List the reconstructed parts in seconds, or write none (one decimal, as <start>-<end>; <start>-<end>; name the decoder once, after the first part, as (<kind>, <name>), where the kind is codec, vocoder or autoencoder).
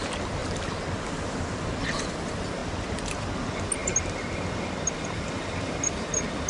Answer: none